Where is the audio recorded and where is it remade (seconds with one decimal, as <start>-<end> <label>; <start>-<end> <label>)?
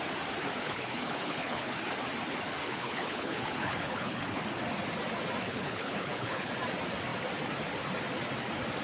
0.0-0.6 recorded; 0.6-1.7 remade; 1.7-2.6 recorded; 2.6-4.4 remade; 4.4-5.4 recorded; 5.4-6.5 remade; 6.5-8.8 recorded